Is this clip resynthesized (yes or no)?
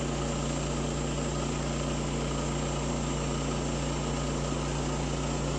no